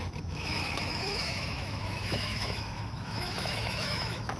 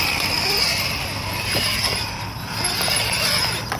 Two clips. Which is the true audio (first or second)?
second